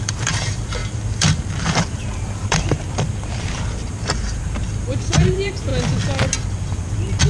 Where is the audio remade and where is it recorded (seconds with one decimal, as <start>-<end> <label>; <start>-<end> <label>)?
0.0-5.7 remade; 5.7-7.3 recorded